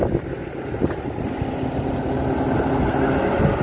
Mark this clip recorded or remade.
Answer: recorded